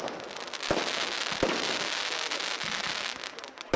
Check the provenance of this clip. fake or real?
real